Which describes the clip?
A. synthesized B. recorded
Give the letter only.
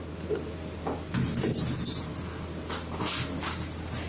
B